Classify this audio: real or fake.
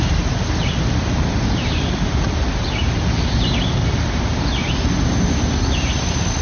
real